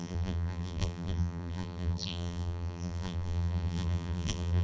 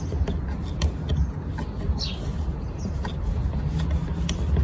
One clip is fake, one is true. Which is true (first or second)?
second